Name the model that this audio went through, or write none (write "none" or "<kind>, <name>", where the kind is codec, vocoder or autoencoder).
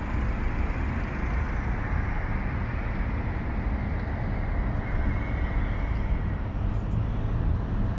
none